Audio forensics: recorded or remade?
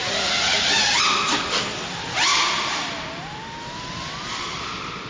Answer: recorded